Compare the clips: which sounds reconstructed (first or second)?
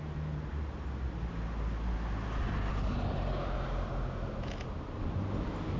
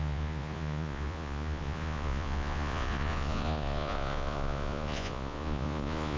second